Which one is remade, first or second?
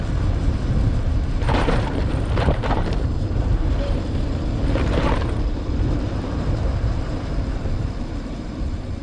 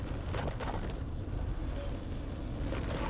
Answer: first